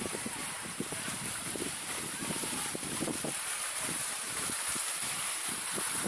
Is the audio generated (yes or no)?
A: yes